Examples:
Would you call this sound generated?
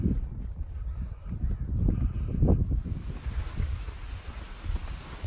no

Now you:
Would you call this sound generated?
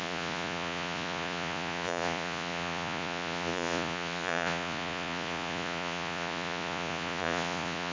yes